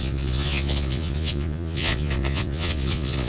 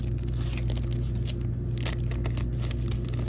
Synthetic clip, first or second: first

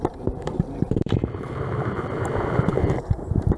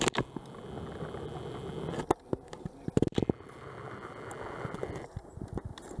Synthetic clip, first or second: first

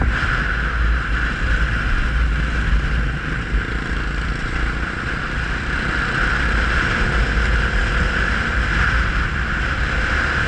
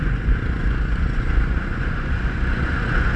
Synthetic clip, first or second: second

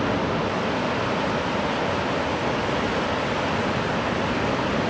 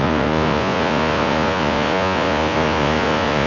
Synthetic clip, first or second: second